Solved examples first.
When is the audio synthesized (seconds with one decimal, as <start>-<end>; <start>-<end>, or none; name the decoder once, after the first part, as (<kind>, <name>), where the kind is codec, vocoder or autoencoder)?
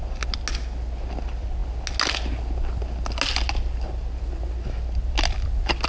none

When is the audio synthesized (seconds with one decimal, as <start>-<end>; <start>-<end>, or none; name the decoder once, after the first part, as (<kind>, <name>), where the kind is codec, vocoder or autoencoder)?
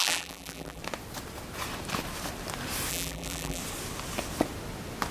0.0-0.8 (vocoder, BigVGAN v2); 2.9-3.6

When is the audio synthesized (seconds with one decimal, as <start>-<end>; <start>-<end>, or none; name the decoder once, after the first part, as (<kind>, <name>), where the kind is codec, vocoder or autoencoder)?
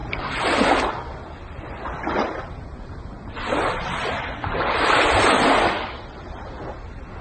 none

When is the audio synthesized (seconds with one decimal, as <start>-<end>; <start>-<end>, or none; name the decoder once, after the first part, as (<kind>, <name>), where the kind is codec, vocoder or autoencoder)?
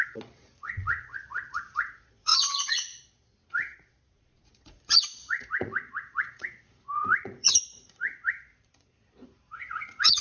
0.0-10.2 (vocoder, Vocos)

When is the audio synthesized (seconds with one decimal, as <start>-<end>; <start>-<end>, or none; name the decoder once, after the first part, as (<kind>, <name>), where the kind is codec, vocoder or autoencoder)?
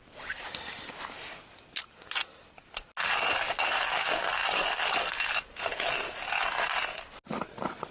none